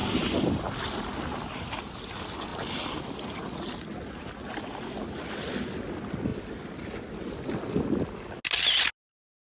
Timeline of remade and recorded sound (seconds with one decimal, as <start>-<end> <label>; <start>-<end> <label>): 0.0-0.6 remade; 0.6-9.5 recorded